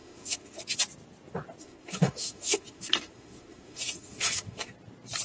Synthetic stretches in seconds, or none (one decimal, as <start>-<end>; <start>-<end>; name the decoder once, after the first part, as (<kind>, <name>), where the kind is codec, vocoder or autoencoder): 0.0-0.6 (autoencoder, DAC-VAE); 1.6-4.7